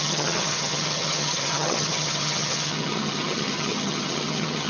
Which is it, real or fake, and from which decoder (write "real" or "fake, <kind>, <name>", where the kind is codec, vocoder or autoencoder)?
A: fake, vocoder, HiFi-GAN